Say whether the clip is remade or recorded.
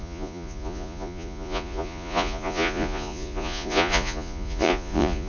remade